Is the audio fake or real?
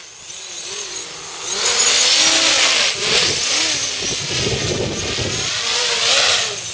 real